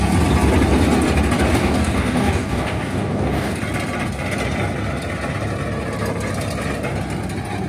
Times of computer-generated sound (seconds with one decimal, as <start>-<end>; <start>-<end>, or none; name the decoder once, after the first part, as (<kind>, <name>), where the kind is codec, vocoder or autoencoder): 1.6-3.6 (codec, DAC)